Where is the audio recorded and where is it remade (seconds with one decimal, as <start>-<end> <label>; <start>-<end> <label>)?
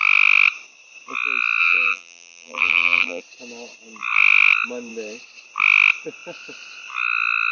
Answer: 0.0-1.6 recorded; 1.6-3.2 remade; 3.2-7.5 recorded